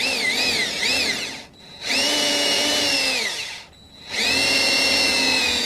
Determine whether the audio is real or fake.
fake